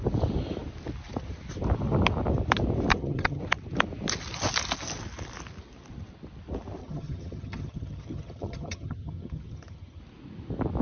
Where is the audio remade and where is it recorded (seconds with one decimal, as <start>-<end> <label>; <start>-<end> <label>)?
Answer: 0.0-2.9 recorded; 2.9-3.4 remade; 3.4-6.8 recorded; 6.8-10.0 remade; 10.0-10.8 recorded